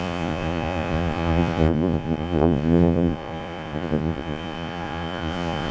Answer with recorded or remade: remade